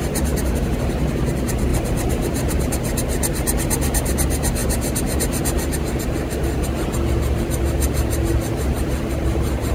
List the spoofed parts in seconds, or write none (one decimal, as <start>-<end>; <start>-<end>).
1.7-2.6